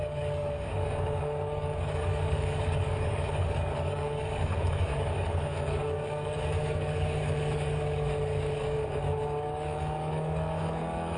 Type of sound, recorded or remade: remade